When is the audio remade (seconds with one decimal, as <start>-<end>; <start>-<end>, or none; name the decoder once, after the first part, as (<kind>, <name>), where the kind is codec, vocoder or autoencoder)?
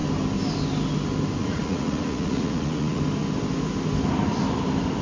1.4-3.0 (vocoder, Vocos)